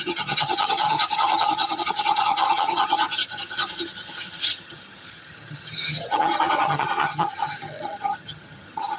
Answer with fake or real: fake